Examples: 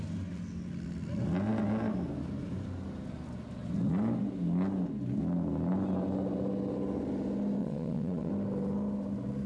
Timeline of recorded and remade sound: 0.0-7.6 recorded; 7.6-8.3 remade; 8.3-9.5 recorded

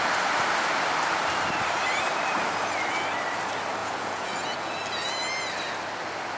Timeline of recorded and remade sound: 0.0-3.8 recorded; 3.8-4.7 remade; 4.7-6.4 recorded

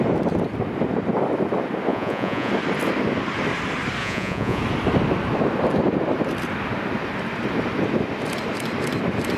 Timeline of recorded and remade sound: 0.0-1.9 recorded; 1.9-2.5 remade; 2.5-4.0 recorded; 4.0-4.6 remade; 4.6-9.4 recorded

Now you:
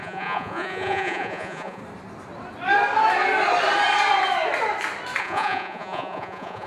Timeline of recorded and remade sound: 0.0-1.8 remade; 1.8-5.2 recorded; 5.2-6.7 remade

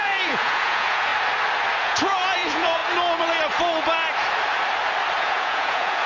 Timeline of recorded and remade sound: 0.0-1.1 remade; 1.1-1.8 recorded; 1.8-2.8 remade; 2.8-5.2 recorded; 5.2-6.1 remade